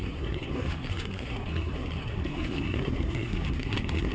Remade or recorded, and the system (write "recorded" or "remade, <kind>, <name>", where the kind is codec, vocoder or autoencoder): remade, codec, SNAC